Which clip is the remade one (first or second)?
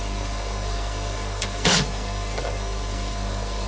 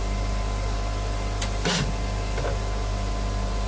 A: first